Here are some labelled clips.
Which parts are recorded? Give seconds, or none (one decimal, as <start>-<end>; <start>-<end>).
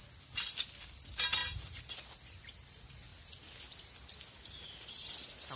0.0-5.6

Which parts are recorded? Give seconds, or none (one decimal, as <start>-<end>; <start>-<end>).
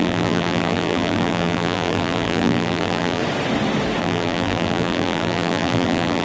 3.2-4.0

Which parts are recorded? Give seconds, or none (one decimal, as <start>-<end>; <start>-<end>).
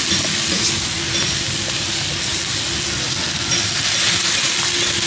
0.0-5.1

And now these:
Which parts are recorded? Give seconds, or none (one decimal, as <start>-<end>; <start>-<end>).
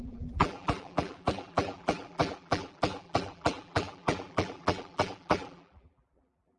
none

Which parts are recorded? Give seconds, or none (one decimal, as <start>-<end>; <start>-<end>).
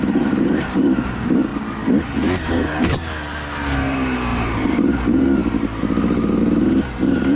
1.5-2.4